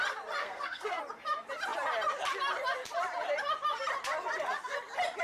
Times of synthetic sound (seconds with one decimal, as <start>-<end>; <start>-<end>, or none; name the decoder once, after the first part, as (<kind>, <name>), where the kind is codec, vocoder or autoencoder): 0.4-1.0 (codec, SNAC)

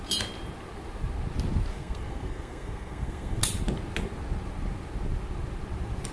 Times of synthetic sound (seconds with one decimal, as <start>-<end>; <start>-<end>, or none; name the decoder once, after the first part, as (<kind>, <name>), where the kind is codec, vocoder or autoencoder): 1.7-3.4 (codec, SNAC)

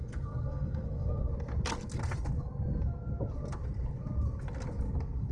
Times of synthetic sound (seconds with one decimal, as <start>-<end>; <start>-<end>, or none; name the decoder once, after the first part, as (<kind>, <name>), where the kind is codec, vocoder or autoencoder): 0.0-1.3 (codec, SNAC)

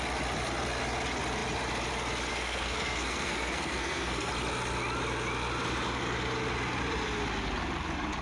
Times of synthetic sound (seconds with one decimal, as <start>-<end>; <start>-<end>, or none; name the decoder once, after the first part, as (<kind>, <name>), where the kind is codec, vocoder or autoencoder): 2.3-4.3 (codec, SNAC)

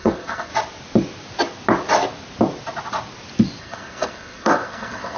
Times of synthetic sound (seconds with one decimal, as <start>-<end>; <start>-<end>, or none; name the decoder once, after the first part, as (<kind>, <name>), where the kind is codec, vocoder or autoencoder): 0.0-0.5 (codec, SNAC); 3.6-5.2

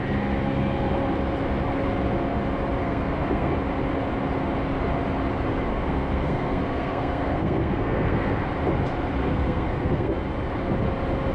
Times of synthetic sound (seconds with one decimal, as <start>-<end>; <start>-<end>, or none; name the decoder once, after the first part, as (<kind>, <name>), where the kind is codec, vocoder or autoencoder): 2.8-3.5 (codec, SNAC); 5.7-8.3; 9.2-10.1

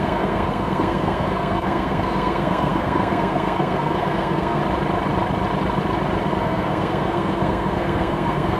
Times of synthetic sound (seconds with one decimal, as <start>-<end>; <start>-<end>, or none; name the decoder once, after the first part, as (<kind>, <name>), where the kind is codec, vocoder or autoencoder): 0.0-4.6 (codec, SNAC); 6.4-8.6

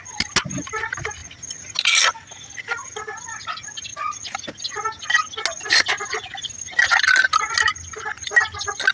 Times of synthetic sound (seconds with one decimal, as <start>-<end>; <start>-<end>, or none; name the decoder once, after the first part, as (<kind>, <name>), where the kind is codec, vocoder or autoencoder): none